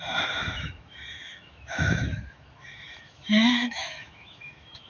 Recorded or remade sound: remade